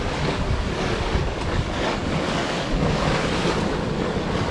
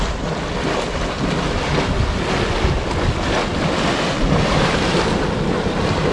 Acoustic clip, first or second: second